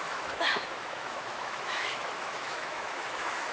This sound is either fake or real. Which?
fake